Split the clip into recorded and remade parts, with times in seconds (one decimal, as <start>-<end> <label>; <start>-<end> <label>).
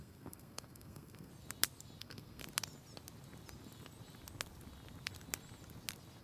0.0-1.3 remade; 1.3-2.0 recorded; 2.0-2.4 remade; 2.4-6.2 recorded